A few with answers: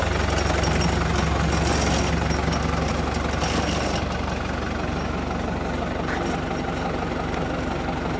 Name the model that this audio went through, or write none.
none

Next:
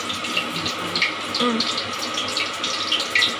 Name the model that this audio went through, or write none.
none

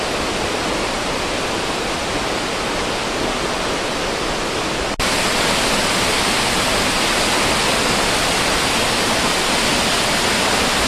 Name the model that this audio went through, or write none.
none